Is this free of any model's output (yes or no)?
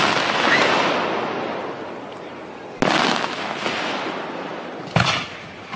yes